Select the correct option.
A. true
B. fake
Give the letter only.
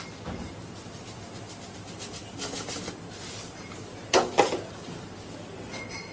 A